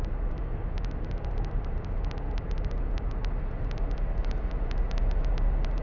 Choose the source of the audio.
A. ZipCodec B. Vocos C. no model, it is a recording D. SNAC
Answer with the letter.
C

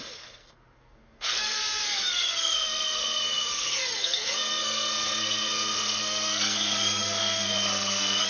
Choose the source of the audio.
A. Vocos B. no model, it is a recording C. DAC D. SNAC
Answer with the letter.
D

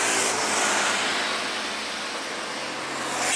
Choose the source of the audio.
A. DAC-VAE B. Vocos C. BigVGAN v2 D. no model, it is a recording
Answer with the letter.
D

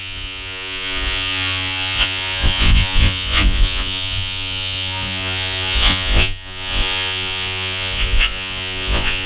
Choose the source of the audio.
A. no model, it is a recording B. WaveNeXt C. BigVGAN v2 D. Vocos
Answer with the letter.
D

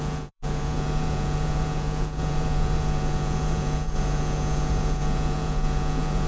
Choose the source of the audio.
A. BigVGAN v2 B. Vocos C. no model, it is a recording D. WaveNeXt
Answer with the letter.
B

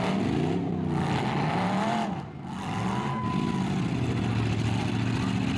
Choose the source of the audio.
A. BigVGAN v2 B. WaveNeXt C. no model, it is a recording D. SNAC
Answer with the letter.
C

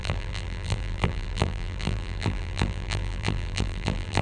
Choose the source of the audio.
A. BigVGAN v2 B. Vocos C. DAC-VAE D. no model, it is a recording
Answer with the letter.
A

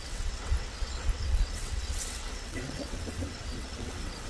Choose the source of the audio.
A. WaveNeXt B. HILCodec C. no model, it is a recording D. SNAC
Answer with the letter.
A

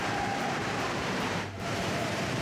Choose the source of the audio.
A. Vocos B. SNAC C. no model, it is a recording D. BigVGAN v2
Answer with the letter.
D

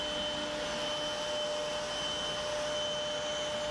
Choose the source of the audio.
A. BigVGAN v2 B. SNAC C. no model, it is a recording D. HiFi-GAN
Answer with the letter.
C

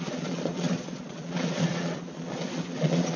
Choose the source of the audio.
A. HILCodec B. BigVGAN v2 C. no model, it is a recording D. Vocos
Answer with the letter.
D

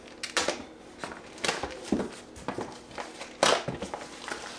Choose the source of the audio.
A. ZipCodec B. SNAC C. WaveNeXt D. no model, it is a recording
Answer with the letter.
D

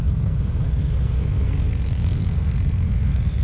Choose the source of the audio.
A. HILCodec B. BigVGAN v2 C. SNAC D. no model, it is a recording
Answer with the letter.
C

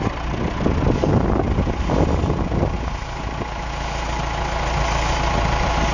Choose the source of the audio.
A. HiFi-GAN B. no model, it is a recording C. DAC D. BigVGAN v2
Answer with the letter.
B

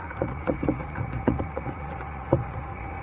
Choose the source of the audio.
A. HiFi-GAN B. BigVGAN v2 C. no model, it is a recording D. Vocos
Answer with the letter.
D